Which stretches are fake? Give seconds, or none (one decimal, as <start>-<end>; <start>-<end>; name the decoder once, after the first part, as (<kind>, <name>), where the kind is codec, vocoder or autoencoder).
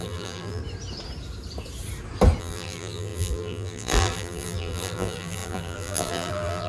0.0-0.6 (vocoder, BigVGAN v2); 2.4-6.7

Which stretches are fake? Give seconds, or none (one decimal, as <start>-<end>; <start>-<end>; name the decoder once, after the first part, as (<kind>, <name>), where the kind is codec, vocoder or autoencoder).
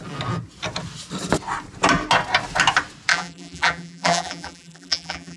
3.1-5.4 (vocoder, BigVGAN v2)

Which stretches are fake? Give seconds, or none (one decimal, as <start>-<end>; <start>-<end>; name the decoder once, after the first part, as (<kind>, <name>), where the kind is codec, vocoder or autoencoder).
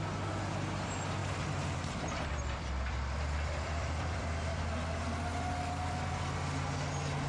1.2-4.7 (vocoder, BigVGAN v2)